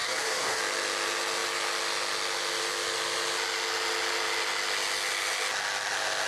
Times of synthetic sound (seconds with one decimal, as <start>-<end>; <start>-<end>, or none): 0.0-0.6